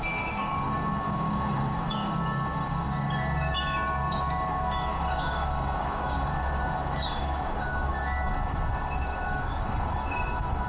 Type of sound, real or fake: fake